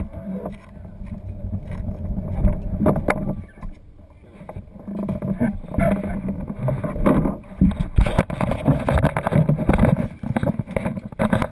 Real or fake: real